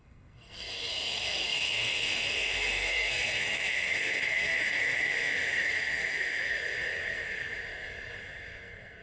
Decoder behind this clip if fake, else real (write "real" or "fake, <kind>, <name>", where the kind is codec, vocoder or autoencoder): fake, codec, SNAC